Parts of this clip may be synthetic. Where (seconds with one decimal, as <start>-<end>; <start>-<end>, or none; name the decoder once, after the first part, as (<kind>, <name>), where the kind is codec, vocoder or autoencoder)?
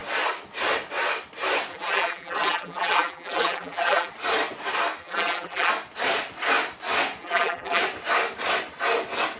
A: 1.7-4.1 (vocoder, BigVGAN v2); 5.0-5.7; 7.2-7.8